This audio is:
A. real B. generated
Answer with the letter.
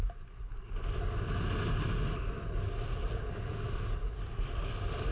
A